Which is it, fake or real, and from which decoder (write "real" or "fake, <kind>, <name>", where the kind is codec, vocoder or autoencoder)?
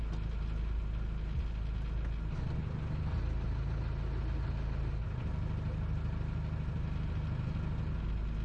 real